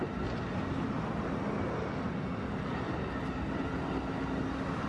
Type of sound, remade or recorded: recorded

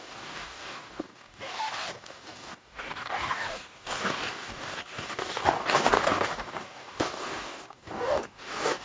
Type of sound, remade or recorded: remade